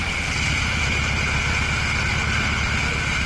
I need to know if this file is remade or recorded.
recorded